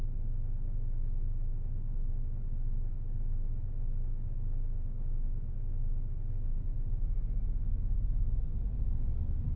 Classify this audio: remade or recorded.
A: recorded